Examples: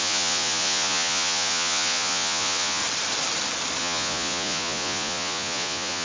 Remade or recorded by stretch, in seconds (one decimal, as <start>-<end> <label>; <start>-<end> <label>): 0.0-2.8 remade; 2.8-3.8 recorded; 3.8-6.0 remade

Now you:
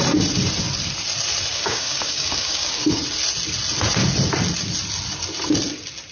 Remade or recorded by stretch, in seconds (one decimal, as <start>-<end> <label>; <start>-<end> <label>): 0.0-1.5 recorded; 1.5-3.0 remade; 3.0-6.1 recorded

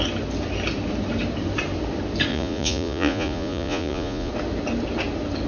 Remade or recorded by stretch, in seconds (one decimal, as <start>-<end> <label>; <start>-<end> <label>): 0.0-2.3 recorded; 2.3-4.3 remade; 4.3-5.5 recorded